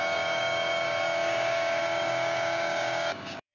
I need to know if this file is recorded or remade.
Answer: remade